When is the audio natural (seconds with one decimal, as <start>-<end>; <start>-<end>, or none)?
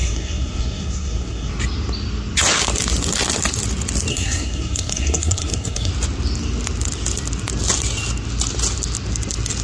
1.5-4.1; 5.9-9.6